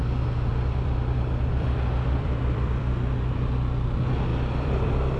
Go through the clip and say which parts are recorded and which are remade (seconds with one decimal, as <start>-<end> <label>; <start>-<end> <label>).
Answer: 0.0-0.5 recorded; 0.5-3.1 remade; 3.1-4.3 recorded; 4.3-5.2 remade